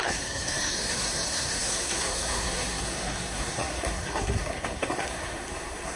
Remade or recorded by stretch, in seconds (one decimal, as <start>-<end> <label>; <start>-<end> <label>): 0.0-6.0 remade

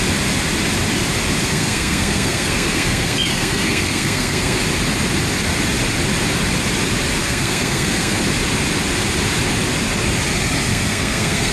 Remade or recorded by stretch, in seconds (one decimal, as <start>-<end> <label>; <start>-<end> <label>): 0.0-1.4 recorded; 1.4-4.6 remade; 4.6-7.2 recorded; 7.2-8.2 remade; 8.2-10.7 recorded; 10.7-11.5 remade

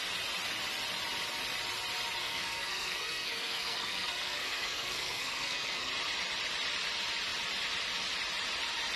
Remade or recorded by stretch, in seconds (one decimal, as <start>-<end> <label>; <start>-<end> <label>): 0.0-2.2 recorded; 2.2-5.9 remade; 5.9-9.0 recorded